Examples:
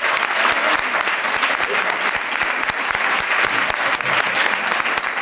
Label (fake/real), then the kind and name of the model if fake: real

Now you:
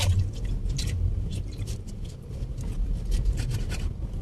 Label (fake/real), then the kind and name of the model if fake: fake, vocoder, BigVGAN v2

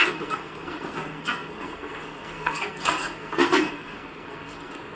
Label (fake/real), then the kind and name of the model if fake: fake, codec, SNAC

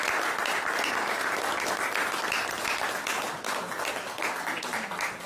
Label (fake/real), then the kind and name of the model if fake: real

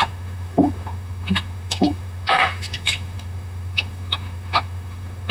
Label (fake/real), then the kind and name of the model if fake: fake, autoencoder, DAC-VAE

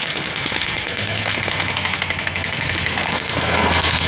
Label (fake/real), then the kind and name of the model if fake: fake, codec, SNAC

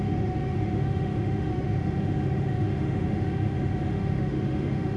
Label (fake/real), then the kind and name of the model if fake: fake, autoencoder, DAC-VAE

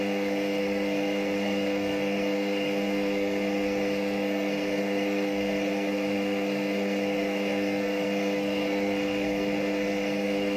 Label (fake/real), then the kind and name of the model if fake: fake, codec, SNAC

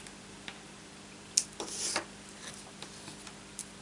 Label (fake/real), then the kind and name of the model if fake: real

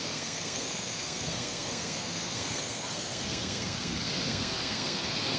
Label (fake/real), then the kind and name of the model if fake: fake, codec, SNAC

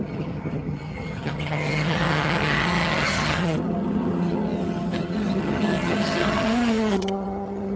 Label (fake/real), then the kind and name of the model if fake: fake, vocoder, HiFi-GAN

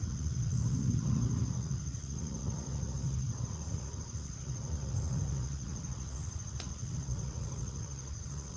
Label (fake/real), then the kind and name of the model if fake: fake, vocoder, Vocos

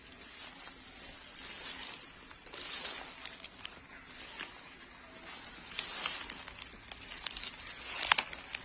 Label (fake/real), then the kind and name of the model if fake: real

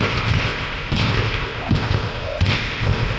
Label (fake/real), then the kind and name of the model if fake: fake, codec, ZipCodec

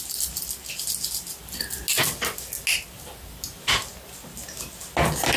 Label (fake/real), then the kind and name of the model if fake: real